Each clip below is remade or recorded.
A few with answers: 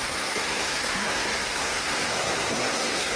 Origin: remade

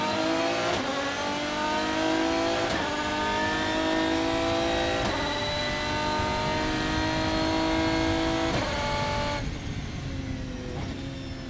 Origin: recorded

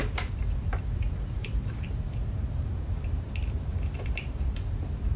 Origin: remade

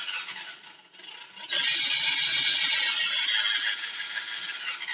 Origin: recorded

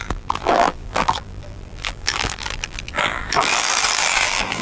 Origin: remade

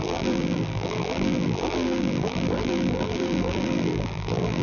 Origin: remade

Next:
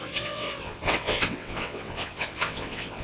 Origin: remade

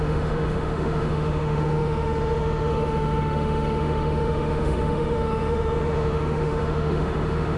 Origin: remade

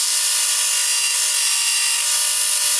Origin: recorded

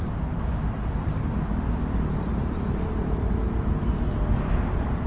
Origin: recorded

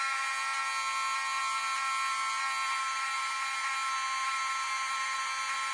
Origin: recorded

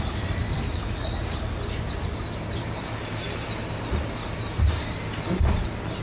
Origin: recorded